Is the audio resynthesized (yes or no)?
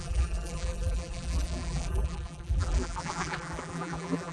yes